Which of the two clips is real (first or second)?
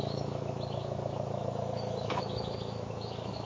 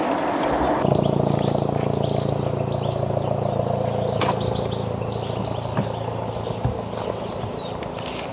second